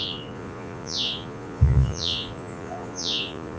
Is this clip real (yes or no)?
no